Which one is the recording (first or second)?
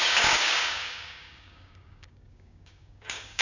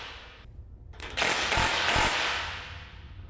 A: second